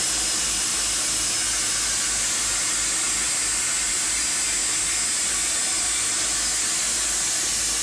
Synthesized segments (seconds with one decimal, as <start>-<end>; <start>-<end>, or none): none